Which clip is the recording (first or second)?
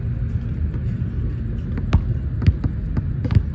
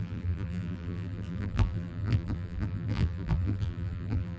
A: first